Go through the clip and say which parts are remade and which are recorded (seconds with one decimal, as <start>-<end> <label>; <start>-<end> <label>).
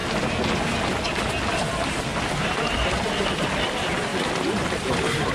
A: 0.0-5.3 recorded